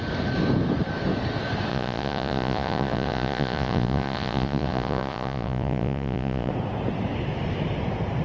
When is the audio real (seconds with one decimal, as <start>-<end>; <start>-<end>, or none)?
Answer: 0.0-1.7; 6.5-8.2